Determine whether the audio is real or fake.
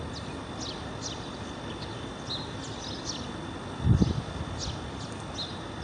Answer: real